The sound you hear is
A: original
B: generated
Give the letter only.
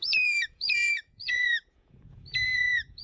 B